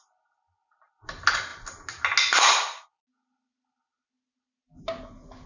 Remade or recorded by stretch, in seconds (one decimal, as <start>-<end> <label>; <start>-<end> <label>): 0.0-5.5 recorded